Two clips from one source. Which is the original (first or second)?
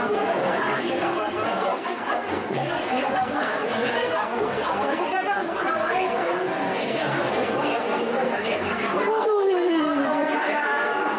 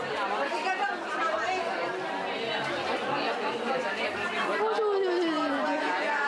second